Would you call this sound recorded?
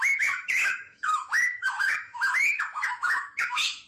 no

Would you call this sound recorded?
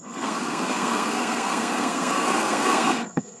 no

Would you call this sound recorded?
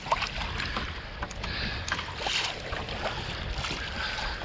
yes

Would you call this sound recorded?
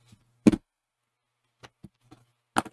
yes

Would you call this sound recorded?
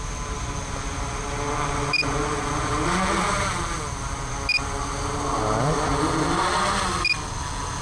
yes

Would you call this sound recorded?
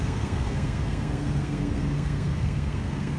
no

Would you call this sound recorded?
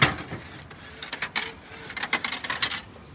yes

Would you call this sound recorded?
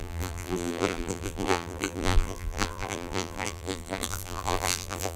no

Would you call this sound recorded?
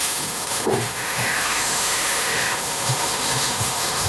no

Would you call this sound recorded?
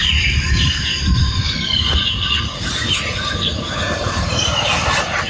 no